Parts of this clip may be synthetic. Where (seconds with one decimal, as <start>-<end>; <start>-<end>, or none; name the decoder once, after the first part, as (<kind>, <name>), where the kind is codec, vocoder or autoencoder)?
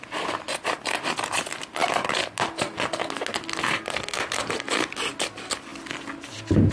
none